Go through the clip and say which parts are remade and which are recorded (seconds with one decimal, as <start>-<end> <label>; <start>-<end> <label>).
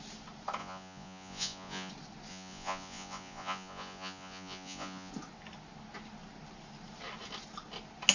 0.0-0.6 recorded; 0.6-1.9 remade; 1.9-2.3 recorded; 2.3-5.1 remade; 5.1-8.1 recorded